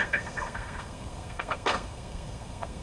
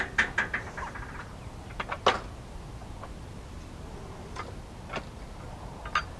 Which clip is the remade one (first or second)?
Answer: first